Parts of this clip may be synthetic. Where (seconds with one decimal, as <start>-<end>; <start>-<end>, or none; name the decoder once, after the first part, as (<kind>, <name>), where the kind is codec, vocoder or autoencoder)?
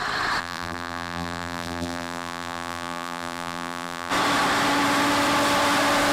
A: 0.4-4.1 (vocoder, BigVGAN v2)